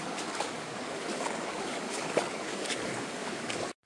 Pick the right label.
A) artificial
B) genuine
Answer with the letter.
A